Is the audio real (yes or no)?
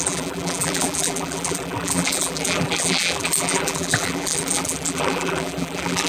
no